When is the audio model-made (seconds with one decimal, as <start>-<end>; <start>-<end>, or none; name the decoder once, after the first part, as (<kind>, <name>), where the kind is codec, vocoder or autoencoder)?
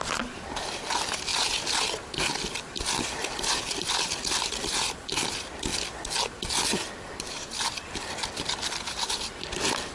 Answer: 0.0-1.3 (vocoder, BigVGAN v2); 1.8-5.7; 6.7-9.9